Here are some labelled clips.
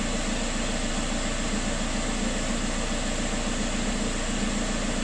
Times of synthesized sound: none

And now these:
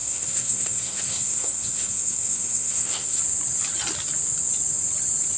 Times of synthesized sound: 0.0-3.2 (codec, SNAC)

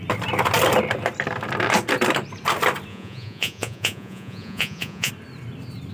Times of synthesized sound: 2.9-5.1 (vocoder, Vocos)

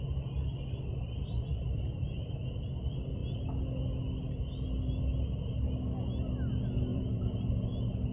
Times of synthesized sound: 1.5-2.3 (vocoder, BigVGAN v2); 6.9-7.5

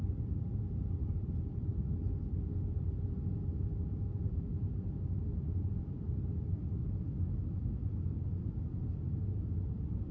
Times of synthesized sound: 0.0-6.8 (vocoder, BigVGAN v2); 8.6-10.1